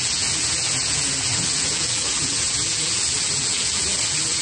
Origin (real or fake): fake